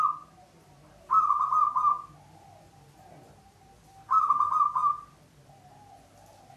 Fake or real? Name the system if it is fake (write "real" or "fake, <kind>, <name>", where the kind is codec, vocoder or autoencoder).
real